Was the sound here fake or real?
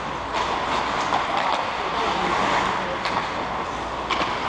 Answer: real